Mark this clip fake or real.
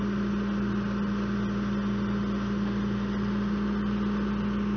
real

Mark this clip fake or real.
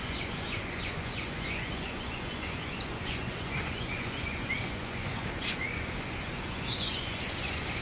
fake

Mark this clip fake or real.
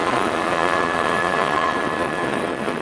fake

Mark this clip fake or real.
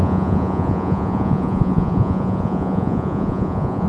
fake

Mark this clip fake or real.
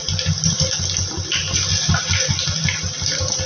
real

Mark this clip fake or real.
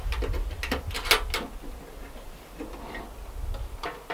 real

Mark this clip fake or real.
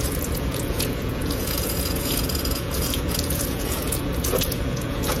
fake